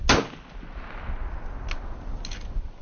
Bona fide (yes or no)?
yes